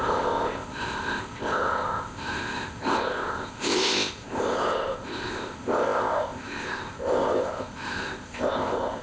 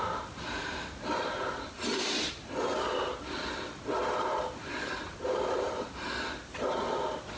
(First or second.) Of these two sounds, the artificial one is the first